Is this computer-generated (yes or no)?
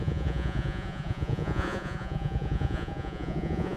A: yes